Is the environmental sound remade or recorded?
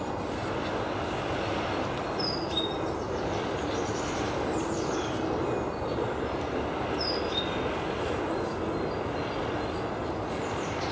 recorded